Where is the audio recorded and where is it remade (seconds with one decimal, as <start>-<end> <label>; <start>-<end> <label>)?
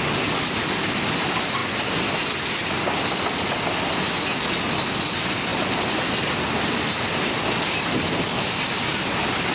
0.0-9.5 recorded